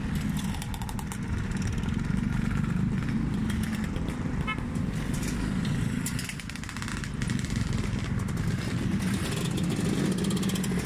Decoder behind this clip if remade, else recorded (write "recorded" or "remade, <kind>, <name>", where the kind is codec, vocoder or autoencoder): recorded